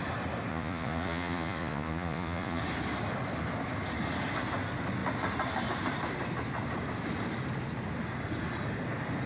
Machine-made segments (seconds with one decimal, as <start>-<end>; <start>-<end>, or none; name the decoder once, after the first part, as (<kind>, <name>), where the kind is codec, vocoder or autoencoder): 0.5-2.6 (vocoder, Vocos)